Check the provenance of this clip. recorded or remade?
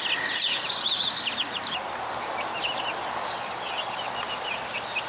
recorded